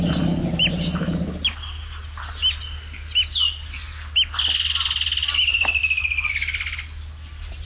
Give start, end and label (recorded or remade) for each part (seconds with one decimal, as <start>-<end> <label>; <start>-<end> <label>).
0.0-7.7 recorded